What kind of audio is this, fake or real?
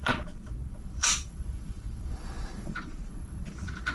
fake